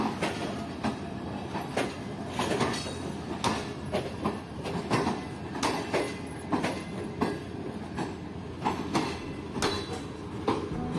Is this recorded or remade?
recorded